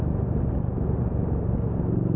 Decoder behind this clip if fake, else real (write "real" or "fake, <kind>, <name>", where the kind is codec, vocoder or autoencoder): real